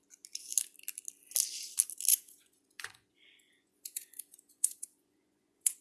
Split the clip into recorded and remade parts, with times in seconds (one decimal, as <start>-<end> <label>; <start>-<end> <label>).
0.0-2.1 recorded; 2.1-5.8 remade